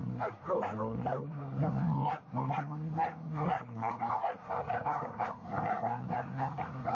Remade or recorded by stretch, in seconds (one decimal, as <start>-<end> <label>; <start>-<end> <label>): 0.0-6.9 remade

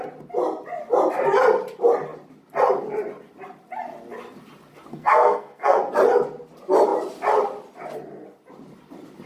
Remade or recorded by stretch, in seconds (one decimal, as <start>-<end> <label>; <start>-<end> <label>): 0.0-4.9 recorded; 4.9-5.8 remade; 5.8-9.3 recorded

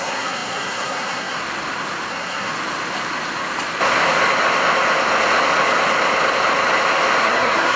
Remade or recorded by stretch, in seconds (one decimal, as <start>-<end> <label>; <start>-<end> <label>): 0.0-1.4 remade; 1.4-2.1 recorded; 2.1-2.5 remade; 2.5-7.2 recorded; 7.2-7.8 remade